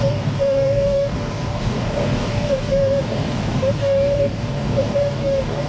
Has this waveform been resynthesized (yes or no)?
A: yes